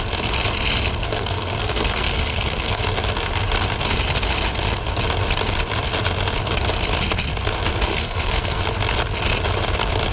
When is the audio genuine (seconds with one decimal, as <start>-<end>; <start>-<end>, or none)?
0.0-1.0; 2.8-7.9; 8.6-10.1